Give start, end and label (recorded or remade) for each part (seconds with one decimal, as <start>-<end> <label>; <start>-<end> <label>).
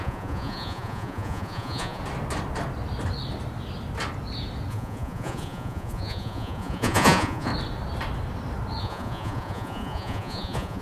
0.0-2.0 remade; 2.0-4.7 recorded; 4.7-7.5 remade; 7.5-8.8 recorded; 8.8-10.8 remade